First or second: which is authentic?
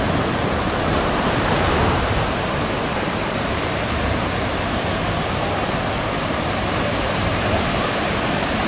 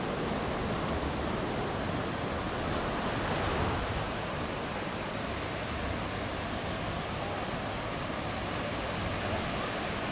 second